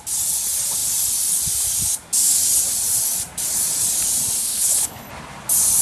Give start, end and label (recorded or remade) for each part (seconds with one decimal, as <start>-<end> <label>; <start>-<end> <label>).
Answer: 0.0-4.4 recorded; 4.4-5.1 remade; 5.1-5.8 recorded